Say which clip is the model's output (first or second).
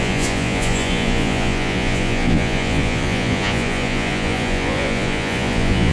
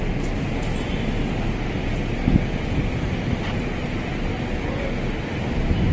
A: first